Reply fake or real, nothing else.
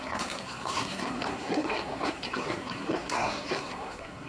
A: fake